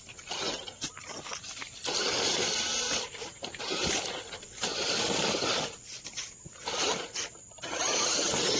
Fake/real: real